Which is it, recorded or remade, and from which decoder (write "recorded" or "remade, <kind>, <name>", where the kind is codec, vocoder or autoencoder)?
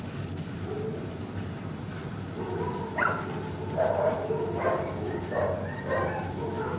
recorded